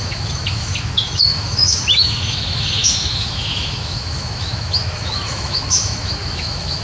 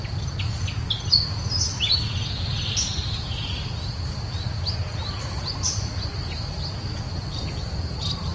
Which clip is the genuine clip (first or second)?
second